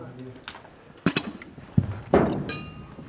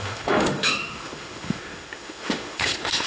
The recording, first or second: first